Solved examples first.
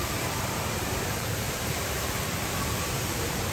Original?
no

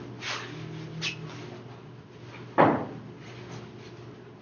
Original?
yes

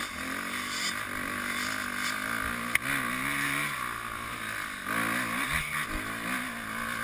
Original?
yes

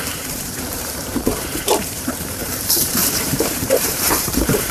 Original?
no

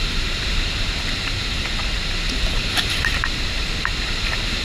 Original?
no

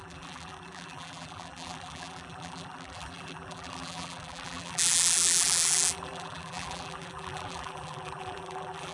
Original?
no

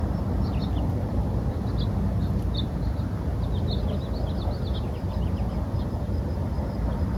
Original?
yes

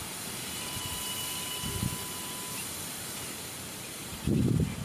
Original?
yes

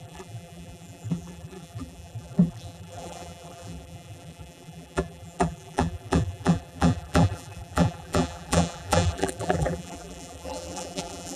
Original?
no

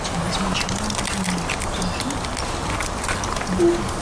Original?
yes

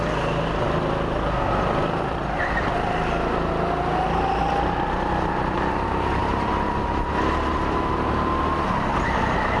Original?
yes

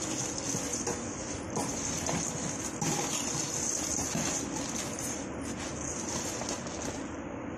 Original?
yes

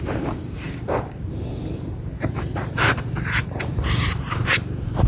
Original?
no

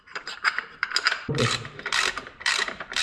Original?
no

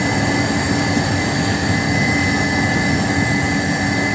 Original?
no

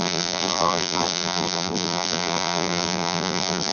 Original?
no